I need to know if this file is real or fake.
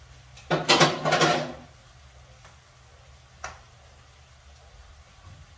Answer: real